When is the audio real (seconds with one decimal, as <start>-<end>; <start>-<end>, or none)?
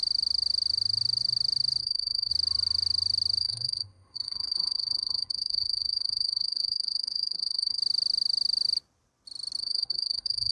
0.0-1.8; 2.3-3.4; 7.8-9.6